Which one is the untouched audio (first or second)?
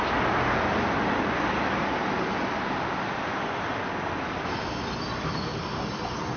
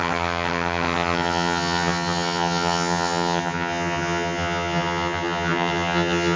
first